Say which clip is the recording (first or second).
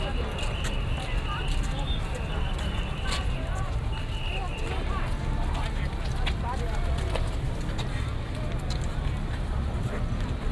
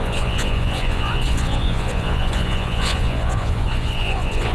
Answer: first